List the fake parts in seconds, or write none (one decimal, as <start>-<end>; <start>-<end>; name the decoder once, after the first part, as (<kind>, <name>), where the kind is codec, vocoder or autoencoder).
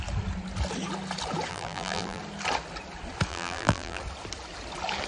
1.5-2.2 (vocoder, BigVGAN v2); 3.3-4.0